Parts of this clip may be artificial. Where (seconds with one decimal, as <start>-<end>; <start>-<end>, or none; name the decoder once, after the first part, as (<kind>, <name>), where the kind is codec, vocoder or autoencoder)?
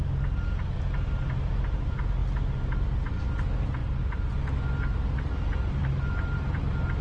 none